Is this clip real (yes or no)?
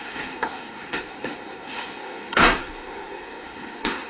no